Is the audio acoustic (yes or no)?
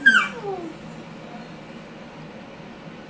yes